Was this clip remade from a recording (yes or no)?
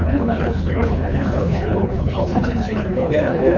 yes